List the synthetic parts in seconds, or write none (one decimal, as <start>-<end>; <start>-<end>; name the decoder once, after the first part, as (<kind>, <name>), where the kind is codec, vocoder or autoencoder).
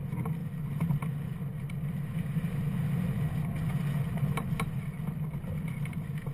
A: none